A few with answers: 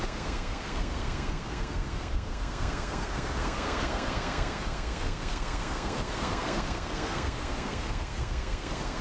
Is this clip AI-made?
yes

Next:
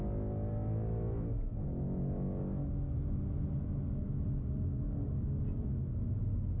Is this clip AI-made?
no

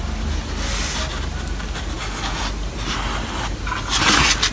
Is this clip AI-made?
no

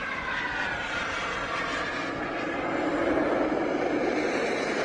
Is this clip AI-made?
no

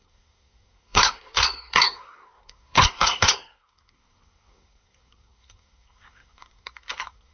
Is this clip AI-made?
yes